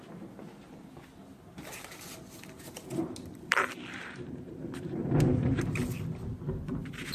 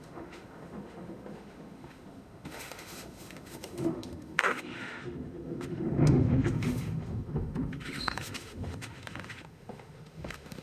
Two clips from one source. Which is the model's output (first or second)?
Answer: second